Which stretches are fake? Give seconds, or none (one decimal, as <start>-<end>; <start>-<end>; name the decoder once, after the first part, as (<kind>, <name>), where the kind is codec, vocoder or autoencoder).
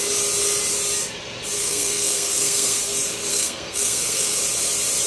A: 1.6-2.8 (codec, SNAC); 3.3-4.4